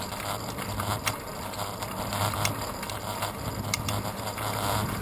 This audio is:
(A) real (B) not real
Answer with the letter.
A